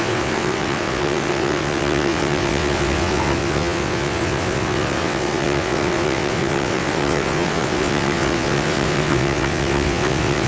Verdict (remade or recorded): remade